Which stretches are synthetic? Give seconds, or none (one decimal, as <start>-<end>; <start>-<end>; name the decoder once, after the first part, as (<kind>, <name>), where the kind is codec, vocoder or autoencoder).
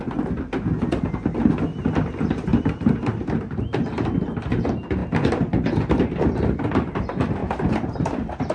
none